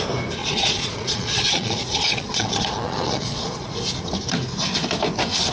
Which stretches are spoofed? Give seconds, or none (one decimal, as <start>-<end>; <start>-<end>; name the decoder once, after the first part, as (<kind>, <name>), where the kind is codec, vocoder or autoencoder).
0.4-3.7 (vocoder, Vocos)